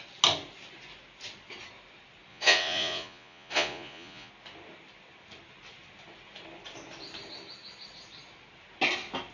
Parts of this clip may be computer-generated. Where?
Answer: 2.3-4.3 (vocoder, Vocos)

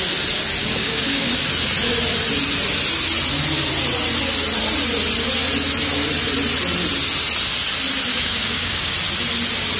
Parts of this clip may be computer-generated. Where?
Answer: 0.6-1.3 (codec, DAC); 8.1-8.9

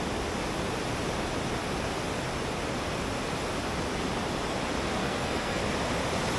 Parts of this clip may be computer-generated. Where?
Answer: 5.0-5.6 (codec, SNAC)

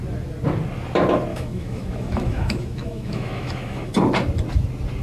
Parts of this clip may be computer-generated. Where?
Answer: 1.3-3.9 (autoencoder, DAC-VAE)

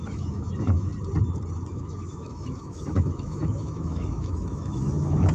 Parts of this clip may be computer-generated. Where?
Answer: 0.0-0.9 (autoencoder, DAC-VAE); 1.7-5.3